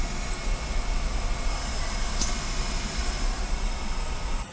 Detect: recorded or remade recorded